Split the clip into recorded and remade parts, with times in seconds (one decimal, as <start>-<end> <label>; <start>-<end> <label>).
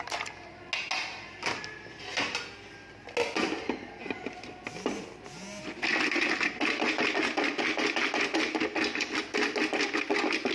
0.0-10.5 recorded